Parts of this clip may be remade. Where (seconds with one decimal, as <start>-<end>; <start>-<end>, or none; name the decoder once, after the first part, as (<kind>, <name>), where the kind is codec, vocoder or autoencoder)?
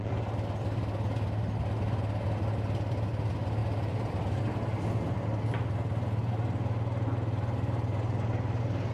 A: 3.6-4.4 (vocoder, BigVGAN v2)